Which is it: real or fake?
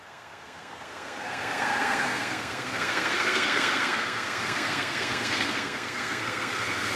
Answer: fake